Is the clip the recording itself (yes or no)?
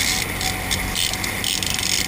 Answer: yes